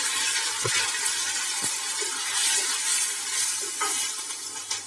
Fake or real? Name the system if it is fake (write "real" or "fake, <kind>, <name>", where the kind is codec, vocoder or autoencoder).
real